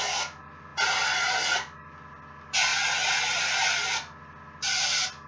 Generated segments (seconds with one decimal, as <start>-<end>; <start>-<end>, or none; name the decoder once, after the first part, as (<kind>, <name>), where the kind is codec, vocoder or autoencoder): none